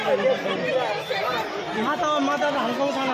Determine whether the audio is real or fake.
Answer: real